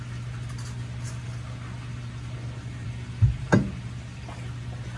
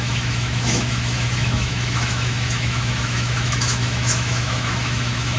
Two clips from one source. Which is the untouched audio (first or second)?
first